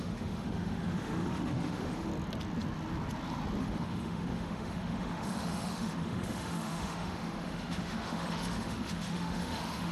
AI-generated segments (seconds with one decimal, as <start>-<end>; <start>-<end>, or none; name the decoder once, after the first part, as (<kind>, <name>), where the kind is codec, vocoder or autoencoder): 0.0-2.1 (autoencoder, DAC-VAE); 3.6-9.9